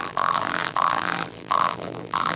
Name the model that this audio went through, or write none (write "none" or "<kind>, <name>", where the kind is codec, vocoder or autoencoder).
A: vocoder, BigVGAN v2